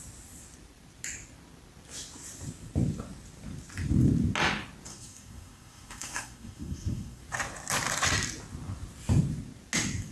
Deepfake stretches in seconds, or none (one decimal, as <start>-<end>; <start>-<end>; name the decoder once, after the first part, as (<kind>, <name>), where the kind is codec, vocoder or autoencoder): 4.9-7.2 (codec, SNAC)